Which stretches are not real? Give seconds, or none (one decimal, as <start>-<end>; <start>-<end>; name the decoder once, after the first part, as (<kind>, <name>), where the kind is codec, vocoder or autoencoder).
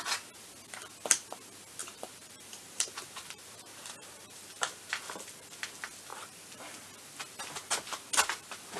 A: 1.8-4.9 (vocoder, BigVGAN v2); 6.1-6.8